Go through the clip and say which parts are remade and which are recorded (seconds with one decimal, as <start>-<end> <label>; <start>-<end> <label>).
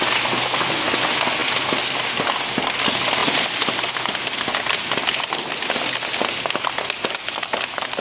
0.0-8.0 recorded